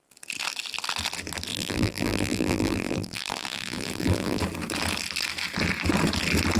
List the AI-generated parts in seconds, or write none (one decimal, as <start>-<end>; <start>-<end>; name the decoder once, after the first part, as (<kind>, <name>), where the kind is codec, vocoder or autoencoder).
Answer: 1.5-4.4 (vocoder, BigVGAN v2)